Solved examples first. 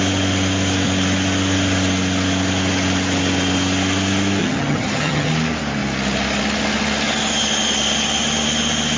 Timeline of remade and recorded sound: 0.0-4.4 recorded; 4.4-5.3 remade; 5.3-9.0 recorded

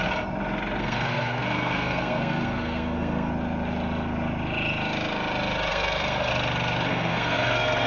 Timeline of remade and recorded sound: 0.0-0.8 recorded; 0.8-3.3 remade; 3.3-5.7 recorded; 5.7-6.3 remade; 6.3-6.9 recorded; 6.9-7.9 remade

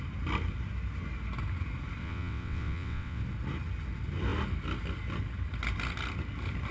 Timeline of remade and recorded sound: 0.0-2.0 recorded; 2.0-3.2 remade; 3.2-6.7 recorded

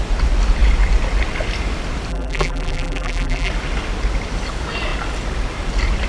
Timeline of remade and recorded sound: 0.0-2.1 recorded; 2.1-3.5 remade; 3.5-6.1 recorded

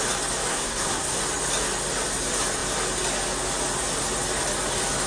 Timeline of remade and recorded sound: 0.0-0.5 recorded; 0.5-1.2 remade; 1.2-5.1 recorded